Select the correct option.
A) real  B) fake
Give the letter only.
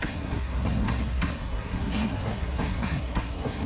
B